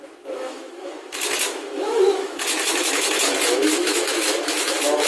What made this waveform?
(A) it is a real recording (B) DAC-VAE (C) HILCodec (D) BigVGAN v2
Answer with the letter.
B